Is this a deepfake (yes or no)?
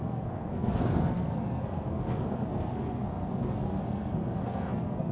yes